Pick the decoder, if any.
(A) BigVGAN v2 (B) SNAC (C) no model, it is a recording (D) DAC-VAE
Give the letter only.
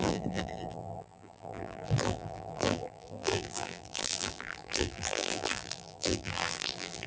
A